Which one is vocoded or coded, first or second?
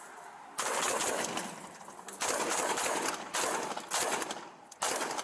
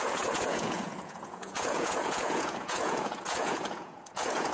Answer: second